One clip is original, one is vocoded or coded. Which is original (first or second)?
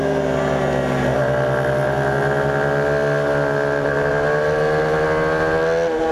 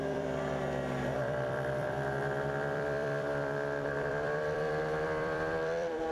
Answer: first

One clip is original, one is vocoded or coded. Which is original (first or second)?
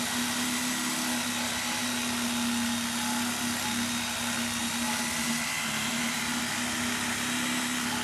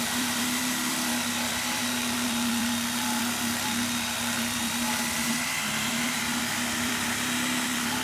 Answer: first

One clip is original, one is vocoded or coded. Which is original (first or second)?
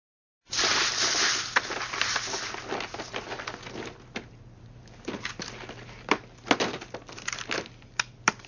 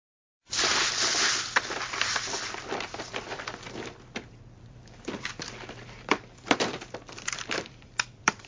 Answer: first